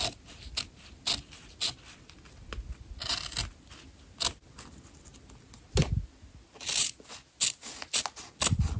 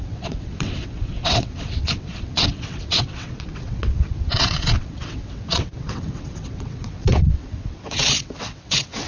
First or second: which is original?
first